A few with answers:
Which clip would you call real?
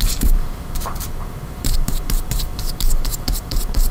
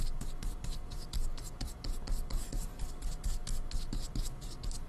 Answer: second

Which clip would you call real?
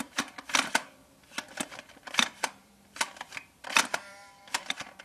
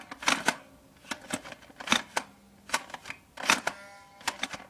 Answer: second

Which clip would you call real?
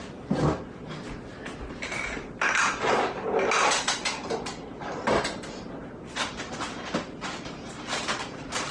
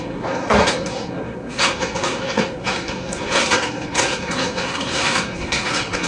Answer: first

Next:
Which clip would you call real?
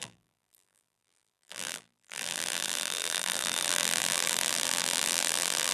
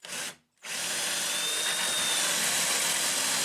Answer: second